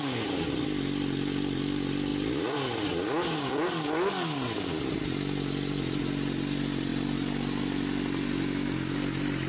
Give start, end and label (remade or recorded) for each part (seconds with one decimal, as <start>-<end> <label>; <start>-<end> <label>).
0.0-9.5 recorded